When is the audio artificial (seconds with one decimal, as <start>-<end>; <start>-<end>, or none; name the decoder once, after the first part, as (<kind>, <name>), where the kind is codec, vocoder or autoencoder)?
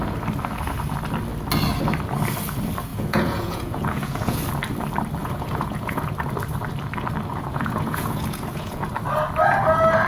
2.9-4.5 (vocoder, Vocos); 5.2-6.1; 7.3-8.9